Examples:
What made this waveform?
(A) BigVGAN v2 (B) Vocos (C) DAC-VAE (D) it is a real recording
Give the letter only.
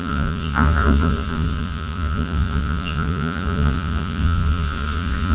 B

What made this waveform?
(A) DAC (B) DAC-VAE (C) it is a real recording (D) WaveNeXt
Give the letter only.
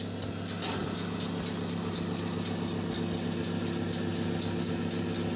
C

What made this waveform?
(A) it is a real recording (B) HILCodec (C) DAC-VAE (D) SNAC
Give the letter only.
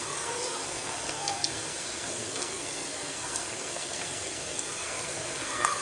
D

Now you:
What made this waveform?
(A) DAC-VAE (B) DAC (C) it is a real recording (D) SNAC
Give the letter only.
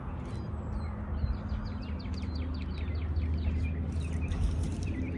C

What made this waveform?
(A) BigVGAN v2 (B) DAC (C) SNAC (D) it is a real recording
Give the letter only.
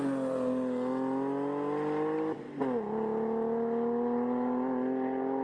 D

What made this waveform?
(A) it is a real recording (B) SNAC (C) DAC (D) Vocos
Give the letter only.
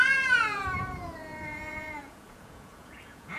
D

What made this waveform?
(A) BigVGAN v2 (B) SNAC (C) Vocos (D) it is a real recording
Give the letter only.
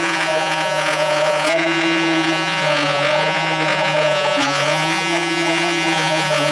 C